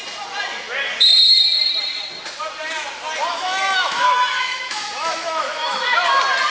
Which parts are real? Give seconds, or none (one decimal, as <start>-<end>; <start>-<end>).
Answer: 0.0-3.3; 5.8-6.5